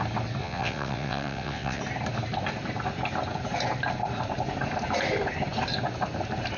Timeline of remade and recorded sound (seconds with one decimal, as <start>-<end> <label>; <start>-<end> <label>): 0.0-0.4 recorded; 0.4-1.8 remade; 1.8-6.6 recorded